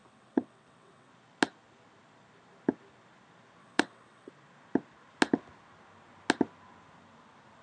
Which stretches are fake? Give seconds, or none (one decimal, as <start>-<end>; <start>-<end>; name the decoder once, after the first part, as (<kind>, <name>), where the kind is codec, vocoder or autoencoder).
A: 0.0-1.1 (vocoder, WaveNeXt); 3.6-4.3